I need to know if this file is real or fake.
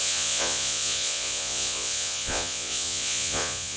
fake